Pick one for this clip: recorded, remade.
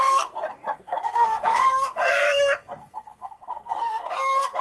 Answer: remade